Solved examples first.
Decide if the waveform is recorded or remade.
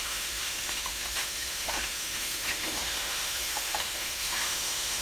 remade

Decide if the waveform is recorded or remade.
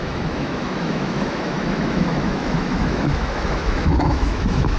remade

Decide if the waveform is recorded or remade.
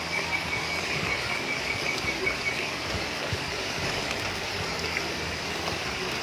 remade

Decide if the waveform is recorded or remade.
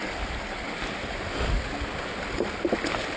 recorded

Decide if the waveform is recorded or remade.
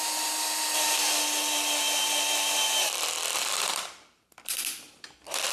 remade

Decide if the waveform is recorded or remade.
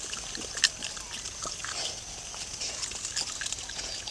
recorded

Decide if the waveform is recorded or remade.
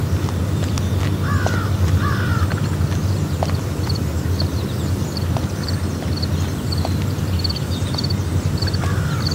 recorded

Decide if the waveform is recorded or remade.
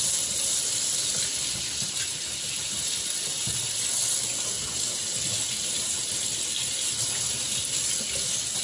recorded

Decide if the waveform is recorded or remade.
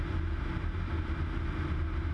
recorded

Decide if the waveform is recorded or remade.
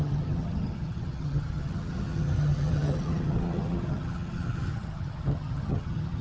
remade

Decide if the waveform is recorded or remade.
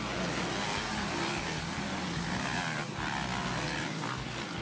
recorded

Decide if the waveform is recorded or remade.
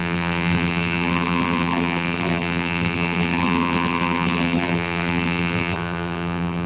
remade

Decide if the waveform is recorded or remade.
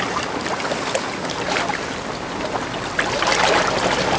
recorded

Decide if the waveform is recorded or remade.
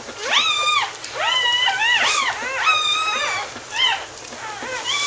recorded